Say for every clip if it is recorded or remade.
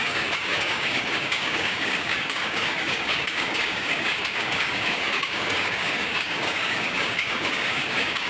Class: remade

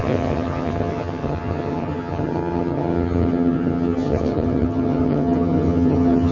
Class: remade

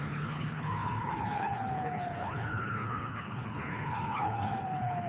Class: remade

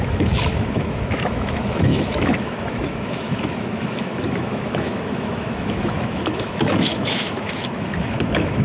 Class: remade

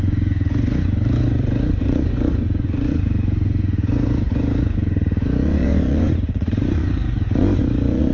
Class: remade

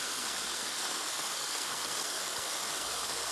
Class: remade